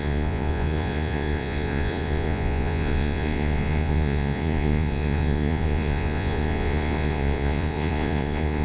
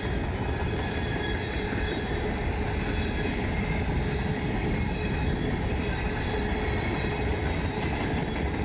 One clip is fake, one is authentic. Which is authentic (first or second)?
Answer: second